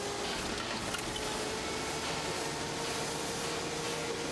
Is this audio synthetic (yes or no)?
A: no